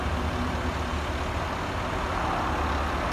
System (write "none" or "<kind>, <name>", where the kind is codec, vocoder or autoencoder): none